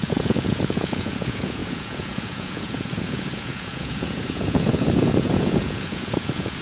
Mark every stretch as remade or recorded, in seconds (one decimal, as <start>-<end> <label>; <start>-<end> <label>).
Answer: 0.0-6.6 remade